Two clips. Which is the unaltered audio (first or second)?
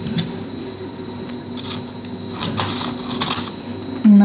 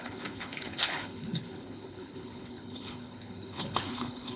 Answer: first